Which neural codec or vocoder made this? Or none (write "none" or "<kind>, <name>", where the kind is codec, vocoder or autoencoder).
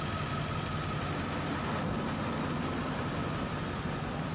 none